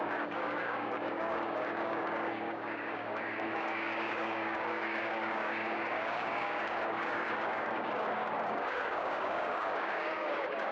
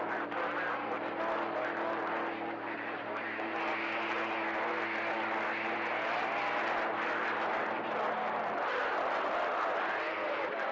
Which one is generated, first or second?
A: first